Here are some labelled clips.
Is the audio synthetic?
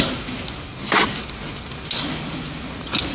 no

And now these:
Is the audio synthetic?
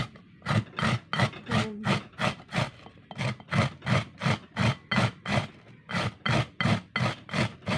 no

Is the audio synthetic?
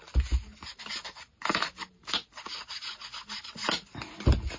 no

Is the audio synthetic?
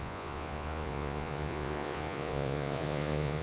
yes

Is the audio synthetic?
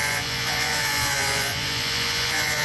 yes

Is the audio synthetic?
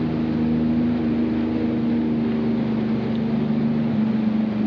no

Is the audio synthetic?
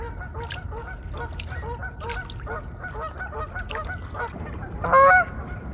no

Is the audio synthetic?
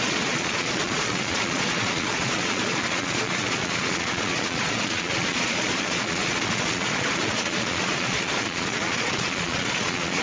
yes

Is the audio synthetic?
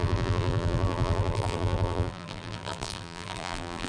yes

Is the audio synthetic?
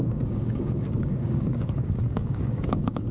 yes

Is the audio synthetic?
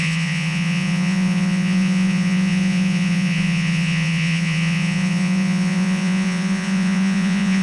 yes